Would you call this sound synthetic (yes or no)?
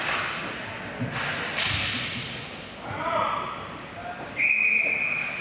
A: no